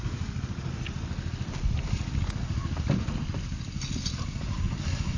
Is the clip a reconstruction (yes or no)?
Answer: no